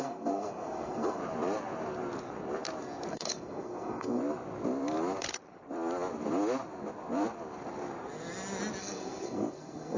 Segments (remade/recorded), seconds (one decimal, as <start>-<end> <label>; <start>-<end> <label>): 0.0-1.2 remade; 1.2-3.1 recorded; 3.1-4.2 remade; 4.2-8.8 recorded; 8.8-10.0 remade